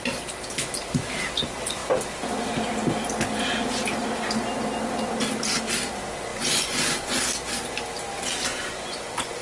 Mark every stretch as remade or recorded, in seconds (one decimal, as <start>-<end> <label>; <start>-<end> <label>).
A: 0.0-6.3 recorded; 6.3-7.2 remade; 7.2-8.5 recorded; 8.5-9.4 remade